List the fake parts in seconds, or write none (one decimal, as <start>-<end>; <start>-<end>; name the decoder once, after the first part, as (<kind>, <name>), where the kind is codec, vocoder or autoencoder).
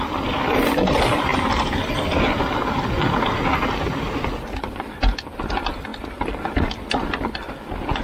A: none